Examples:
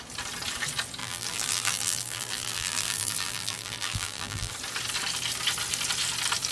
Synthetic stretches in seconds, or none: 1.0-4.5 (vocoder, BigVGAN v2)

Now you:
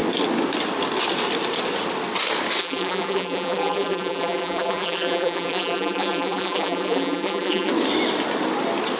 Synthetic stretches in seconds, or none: 2.6-7.7 (vocoder, BigVGAN v2)

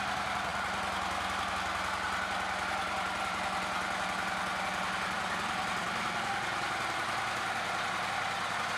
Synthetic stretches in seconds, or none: none

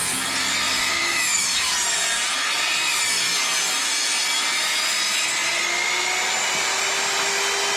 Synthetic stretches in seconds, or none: 1.0-1.7 (autoencoder, DAC-VAE)

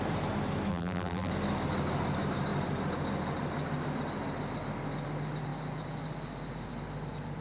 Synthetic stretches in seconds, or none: 0.7-1.3 (vocoder, BigVGAN v2)

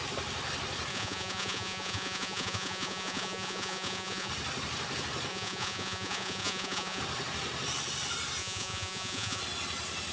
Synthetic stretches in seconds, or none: 0.9-4.3 (vocoder, Vocos); 5.3-7.0; 8.4-9.4